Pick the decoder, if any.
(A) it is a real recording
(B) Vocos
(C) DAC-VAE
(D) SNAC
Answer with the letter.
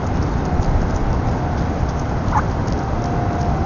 A